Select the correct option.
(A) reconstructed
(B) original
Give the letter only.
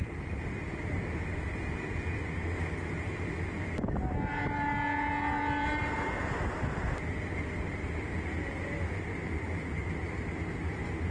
B